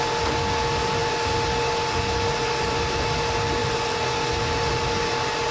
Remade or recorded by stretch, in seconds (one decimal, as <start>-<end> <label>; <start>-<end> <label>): 0.0-5.5 recorded